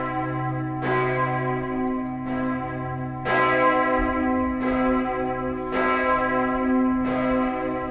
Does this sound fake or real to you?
real